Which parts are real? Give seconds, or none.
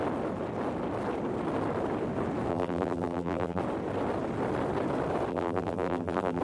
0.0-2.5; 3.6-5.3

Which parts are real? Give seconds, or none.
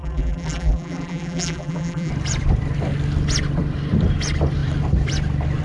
2.1-5.6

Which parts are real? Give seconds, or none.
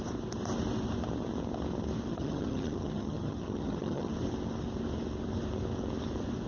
0.0-2.1; 4.1-6.5